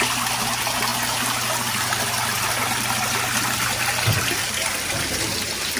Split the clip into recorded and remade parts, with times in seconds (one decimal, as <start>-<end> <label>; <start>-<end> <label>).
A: 0.0-5.8 recorded